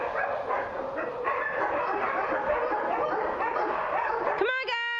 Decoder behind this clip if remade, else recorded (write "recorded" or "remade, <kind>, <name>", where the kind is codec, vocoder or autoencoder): recorded